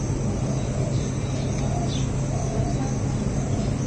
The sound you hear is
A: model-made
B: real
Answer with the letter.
B